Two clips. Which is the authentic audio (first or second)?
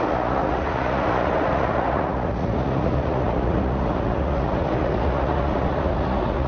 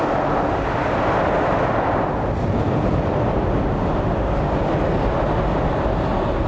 second